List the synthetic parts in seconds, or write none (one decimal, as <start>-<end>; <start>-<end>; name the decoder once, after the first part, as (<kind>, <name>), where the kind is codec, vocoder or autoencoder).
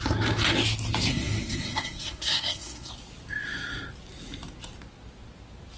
1.1-2.9 (codec, SNAC)